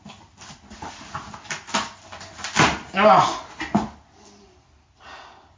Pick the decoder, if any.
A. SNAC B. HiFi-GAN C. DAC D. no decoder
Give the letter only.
D